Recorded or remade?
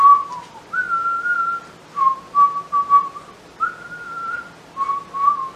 recorded